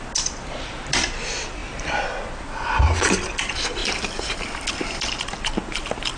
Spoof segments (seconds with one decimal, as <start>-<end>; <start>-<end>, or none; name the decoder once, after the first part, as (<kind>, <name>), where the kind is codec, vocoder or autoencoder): none

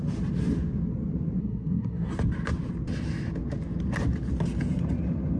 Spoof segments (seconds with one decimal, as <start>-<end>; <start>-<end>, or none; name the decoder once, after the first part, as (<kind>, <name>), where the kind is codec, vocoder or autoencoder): 1.4-2.1 (codec, SNAC)

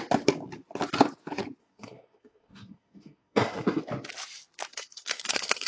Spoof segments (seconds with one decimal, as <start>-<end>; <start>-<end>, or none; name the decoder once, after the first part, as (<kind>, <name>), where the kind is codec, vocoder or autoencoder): 1.6-3.8 (codec, SNAC); 4.7-5.7

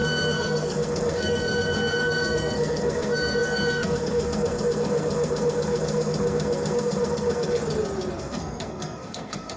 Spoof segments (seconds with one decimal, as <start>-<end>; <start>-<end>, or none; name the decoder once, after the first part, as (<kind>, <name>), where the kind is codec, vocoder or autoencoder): 0.0-7.6 (codec, SNAC); 8.2-9.6

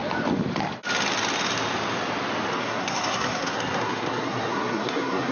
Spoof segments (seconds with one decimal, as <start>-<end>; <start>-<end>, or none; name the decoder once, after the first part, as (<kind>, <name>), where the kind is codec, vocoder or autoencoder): 2.6-5.3 (codec, SNAC)

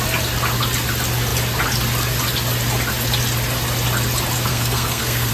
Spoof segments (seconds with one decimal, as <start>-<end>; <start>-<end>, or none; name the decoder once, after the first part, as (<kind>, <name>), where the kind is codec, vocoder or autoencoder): 4.5-5.3 (codec, SNAC)

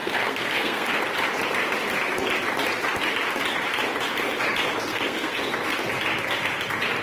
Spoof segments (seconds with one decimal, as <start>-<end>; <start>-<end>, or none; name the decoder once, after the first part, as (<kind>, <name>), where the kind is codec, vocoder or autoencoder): 0.0-1.0 (codec, SNAC); 4.9-5.4

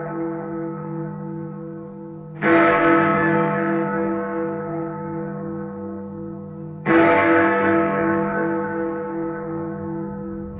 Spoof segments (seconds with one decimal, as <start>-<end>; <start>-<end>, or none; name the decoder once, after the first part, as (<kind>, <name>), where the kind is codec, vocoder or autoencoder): 0.0-10.6 (codec, SNAC)